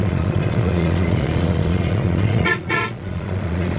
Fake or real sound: fake